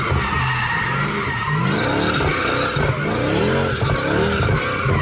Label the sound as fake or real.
real